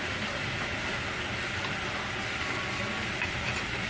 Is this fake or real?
real